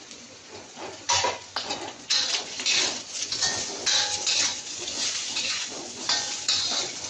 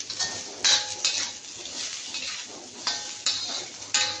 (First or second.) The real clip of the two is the second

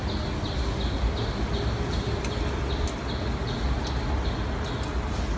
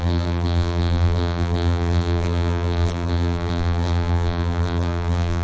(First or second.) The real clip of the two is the first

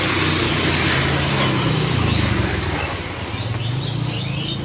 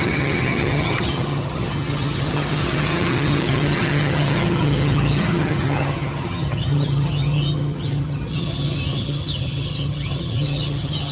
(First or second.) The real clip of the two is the first